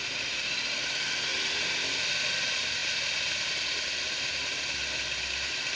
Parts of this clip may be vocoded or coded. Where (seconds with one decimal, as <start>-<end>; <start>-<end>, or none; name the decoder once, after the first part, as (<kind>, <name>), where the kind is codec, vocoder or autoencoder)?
none